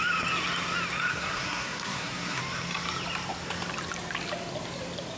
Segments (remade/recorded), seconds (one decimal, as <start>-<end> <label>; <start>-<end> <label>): 0.0-1.1 recorded; 1.1-2.4 remade; 2.4-5.2 recorded

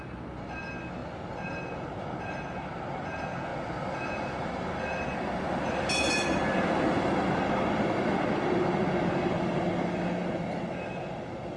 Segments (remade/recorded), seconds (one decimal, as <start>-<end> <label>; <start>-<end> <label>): 0.0-11.6 recorded

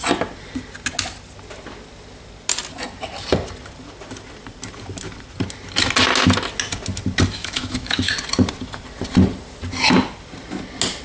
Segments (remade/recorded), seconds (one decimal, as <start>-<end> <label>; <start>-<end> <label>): 0.0-7.4 recorded; 7.4-8.1 remade; 8.1-11.0 recorded

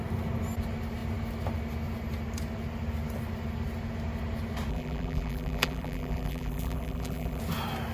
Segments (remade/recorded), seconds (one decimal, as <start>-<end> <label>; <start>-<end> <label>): 0.0-4.7 recorded; 4.7-7.4 remade; 7.4-7.9 recorded

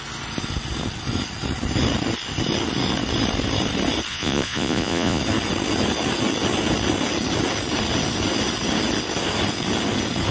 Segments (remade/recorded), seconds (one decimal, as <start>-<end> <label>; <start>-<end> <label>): 0.0-4.1 recorded; 4.1-5.2 remade; 5.2-10.3 recorded